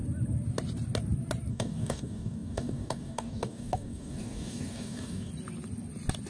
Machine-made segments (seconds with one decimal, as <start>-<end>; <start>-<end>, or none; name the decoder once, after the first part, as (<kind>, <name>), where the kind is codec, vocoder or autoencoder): 1.5-5.3 (codec, DAC)